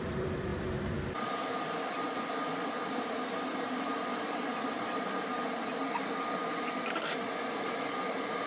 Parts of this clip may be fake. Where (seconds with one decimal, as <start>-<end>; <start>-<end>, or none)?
0.0-5.3; 6.0-8.5